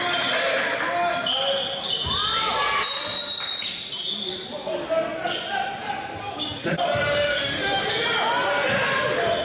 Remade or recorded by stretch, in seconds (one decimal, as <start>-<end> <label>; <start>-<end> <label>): 0.0-7.2 recorded; 7.2-7.8 remade; 7.8-9.4 recorded